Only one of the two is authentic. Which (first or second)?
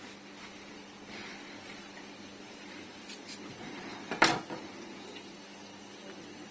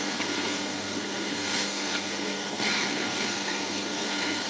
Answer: first